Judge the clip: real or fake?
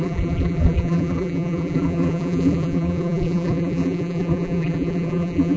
fake